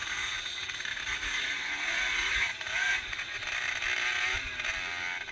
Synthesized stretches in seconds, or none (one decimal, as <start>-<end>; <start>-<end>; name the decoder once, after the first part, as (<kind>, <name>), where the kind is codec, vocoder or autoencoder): 0.0-3.4 (vocoder, Vocos)